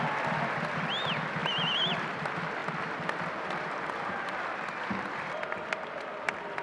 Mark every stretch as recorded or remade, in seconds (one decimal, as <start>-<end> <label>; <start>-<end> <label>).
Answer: 0.0-1.4 recorded; 1.4-2.1 remade; 2.1-2.6 recorded; 2.6-6.6 remade